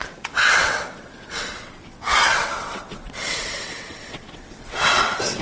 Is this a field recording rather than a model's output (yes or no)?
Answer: no